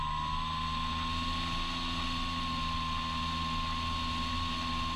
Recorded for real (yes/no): yes